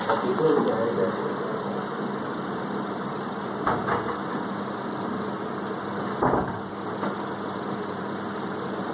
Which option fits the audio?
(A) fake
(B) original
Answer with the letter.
B